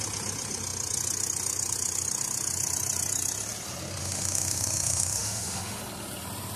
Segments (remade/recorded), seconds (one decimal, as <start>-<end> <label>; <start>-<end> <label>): 0.0-4.0 recorded; 4.0-5.8 remade; 5.8-6.6 recorded